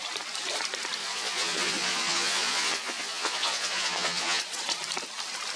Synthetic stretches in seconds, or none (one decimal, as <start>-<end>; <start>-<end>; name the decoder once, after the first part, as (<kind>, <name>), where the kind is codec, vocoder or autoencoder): 1.0-4.4 (vocoder, Vocos)